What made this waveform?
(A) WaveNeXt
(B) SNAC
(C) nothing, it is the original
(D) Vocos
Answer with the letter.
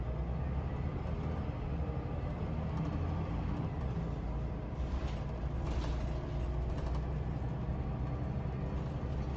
C